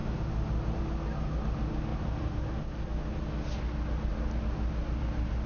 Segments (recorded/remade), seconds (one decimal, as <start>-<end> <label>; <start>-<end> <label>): 0.0-1.9 recorded; 1.9-2.6 remade; 2.6-5.5 recorded